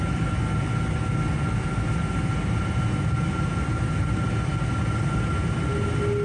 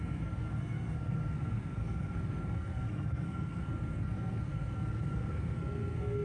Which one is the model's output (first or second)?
second